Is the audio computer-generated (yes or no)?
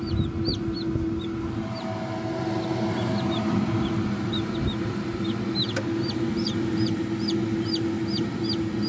no